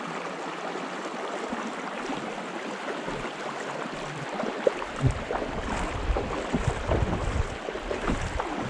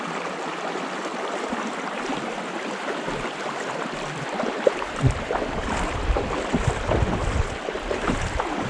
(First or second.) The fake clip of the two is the second